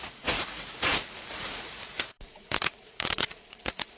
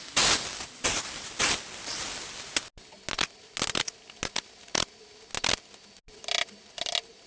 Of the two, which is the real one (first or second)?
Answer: second